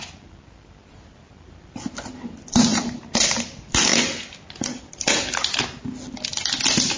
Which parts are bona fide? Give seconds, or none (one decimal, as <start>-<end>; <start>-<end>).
0.0-2.7; 3.4-7.0